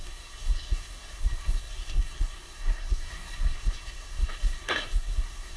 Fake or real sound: fake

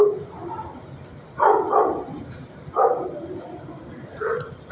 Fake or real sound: real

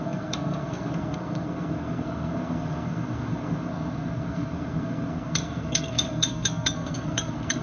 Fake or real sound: fake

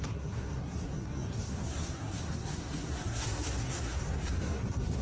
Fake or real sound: fake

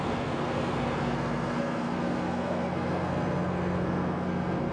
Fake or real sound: fake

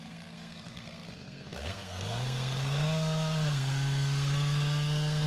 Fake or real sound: fake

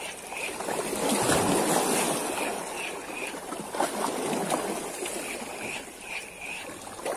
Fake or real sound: real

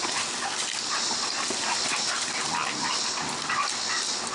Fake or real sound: real